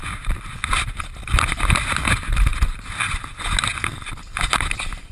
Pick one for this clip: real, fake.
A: real